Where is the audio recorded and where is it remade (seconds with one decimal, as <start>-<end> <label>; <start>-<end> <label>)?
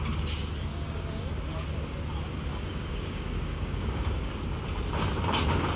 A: 0.0-0.7 recorded; 0.7-1.4 remade; 1.4-2.5 recorded; 2.5-4.3 remade; 4.3-5.8 recorded